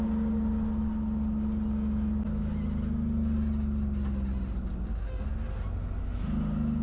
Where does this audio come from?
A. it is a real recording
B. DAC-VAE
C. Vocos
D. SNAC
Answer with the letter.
A